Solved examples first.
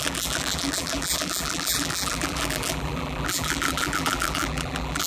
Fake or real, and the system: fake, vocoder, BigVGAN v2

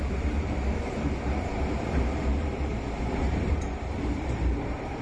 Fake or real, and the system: fake, vocoder, BigVGAN v2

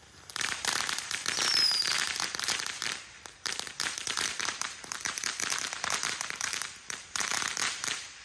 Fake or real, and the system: fake, vocoder, BigVGAN v2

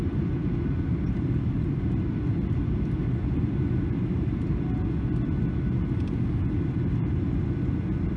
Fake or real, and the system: real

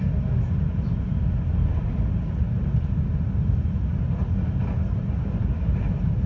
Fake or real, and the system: real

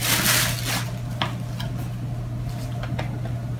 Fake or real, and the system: real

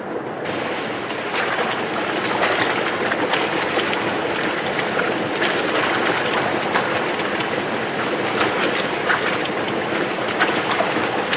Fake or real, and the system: real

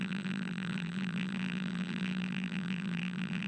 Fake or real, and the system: fake, vocoder, BigVGAN v2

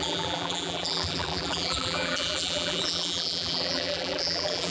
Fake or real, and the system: fake, vocoder, BigVGAN v2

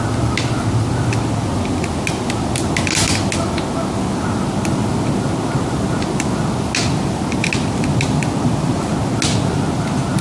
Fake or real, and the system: real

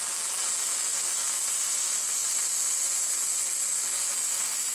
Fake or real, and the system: real